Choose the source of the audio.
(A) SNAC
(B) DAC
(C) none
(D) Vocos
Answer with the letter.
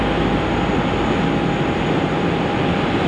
C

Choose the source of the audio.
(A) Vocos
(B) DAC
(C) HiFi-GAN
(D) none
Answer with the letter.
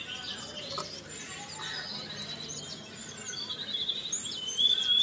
D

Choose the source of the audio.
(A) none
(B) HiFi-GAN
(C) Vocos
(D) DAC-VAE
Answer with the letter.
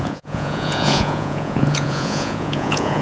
C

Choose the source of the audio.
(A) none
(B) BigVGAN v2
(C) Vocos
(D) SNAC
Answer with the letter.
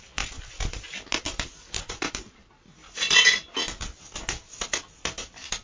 A